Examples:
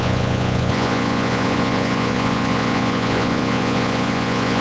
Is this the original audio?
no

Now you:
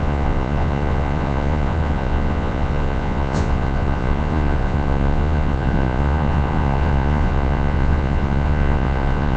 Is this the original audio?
no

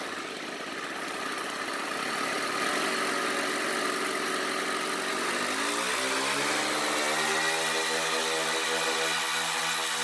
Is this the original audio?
yes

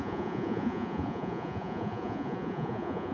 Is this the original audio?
no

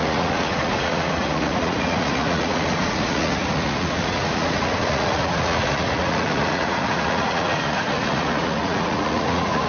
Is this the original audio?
no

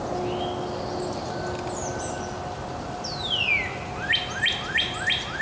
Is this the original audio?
yes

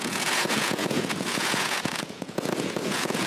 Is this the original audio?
no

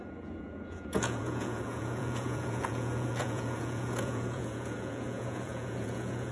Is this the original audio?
no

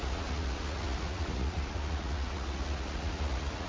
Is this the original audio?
no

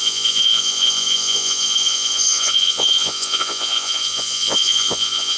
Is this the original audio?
no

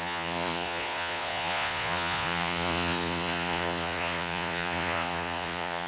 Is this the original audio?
no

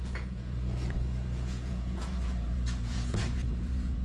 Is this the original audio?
no